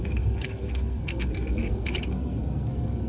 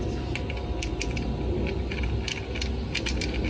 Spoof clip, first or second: first